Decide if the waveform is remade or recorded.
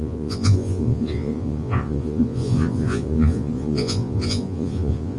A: remade